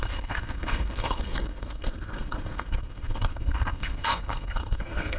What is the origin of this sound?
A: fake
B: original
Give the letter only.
A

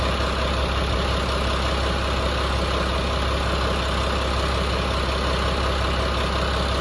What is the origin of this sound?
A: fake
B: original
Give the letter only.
B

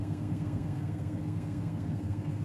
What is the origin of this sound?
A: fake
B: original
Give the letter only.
A